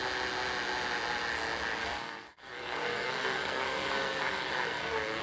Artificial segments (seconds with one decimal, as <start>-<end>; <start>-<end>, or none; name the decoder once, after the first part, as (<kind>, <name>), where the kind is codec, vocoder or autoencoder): 1.8-5.2 (codec, SNAC)